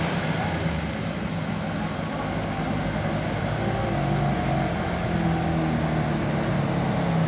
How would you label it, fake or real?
real